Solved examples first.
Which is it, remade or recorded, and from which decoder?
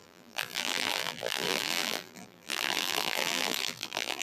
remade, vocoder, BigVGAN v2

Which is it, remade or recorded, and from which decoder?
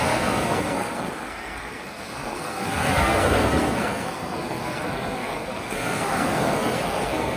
remade, codec, SNAC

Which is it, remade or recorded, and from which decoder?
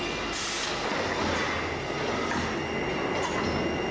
recorded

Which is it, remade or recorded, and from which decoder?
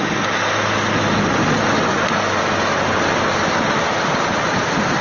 recorded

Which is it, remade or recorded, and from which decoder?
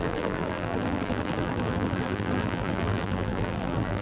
remade, vocoder, BigVGAN v2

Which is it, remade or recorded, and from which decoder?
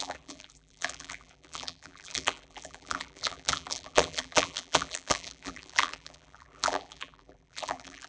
remade, vocoder, BigVGAN v2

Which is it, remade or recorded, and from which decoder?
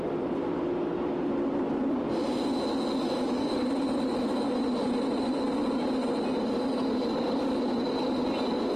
recorded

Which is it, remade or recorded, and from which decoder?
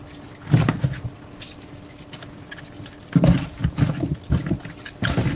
recorded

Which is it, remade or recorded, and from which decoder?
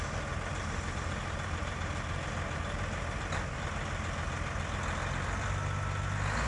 recorded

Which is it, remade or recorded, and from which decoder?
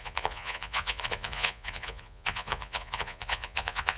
remade, vocoder, Vocos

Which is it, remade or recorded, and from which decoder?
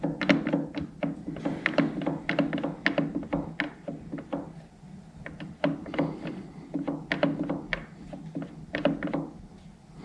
recorded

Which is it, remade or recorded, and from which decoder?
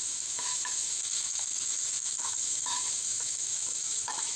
remade, autoencoder, DAC-VAE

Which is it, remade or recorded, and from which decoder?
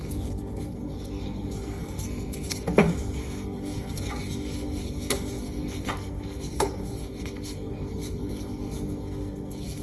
remade, codec, SNAC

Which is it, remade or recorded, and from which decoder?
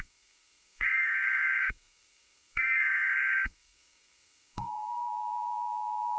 remade, codec, SNAC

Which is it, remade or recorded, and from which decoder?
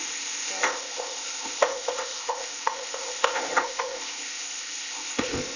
remade, codec, ZipCodec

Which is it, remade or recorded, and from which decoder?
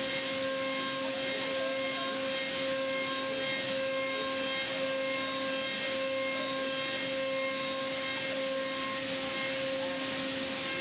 recorded